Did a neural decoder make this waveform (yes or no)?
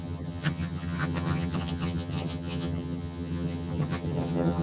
yes